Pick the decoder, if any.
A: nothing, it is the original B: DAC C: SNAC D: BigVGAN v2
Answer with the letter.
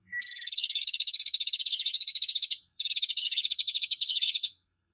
C